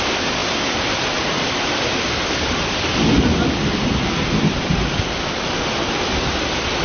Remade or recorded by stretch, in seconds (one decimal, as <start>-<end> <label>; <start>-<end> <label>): 0.0-6.8 recorded